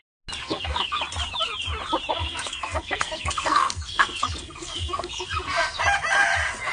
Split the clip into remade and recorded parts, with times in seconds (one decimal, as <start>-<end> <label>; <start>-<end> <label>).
0.0-0.4 recorded; 0.4-1.0 remade; 1.0-2.1 recorded; 2.1-5.8 remade; 5.8-6.7 recorded